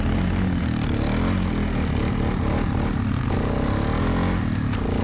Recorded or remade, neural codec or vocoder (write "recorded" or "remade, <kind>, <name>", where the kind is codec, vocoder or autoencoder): recorded